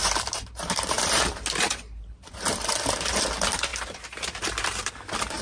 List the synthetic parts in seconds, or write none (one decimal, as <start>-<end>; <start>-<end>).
0.0-3.2; 3.7-4.9